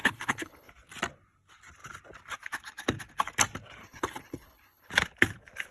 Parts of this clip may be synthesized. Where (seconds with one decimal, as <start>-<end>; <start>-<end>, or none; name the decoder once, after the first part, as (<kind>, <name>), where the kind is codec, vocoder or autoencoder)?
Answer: 0.0-0.7 (codec, HILCodec); 3.8-4.9